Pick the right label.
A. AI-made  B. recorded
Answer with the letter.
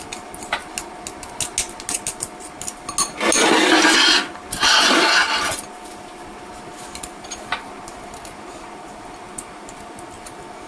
B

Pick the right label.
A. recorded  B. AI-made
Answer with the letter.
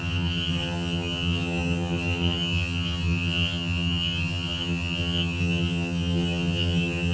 B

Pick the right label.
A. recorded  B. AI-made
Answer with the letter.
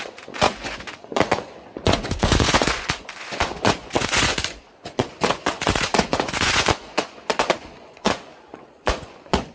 B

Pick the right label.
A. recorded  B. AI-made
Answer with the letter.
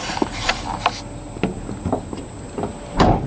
B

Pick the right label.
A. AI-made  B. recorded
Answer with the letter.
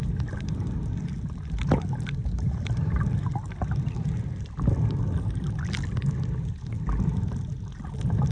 B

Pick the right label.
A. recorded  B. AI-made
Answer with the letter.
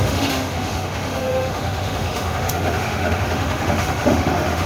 B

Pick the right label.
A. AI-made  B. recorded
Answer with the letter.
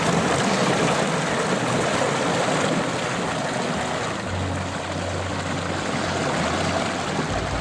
B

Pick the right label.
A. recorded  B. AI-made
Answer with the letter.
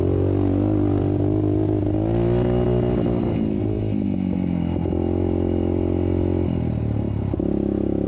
A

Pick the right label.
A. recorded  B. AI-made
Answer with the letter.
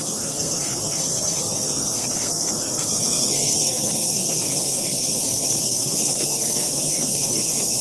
B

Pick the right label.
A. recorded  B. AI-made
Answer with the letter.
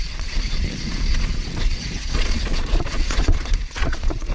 B